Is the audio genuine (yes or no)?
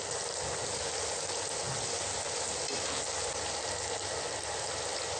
yes